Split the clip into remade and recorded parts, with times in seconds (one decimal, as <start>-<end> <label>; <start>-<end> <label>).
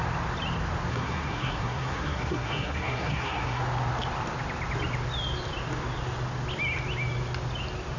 0.0-0.9 recorded; 0.9-3.6 remade; 3.6-8.0 recorded